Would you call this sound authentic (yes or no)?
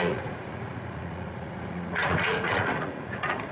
no